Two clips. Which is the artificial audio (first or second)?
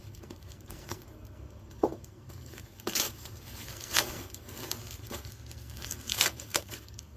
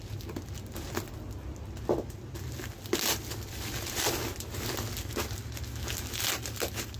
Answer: first